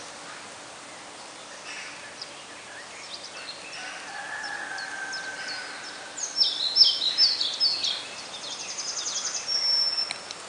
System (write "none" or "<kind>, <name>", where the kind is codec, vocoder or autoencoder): none